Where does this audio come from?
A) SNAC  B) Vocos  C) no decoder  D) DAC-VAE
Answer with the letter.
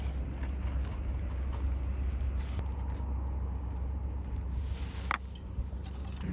C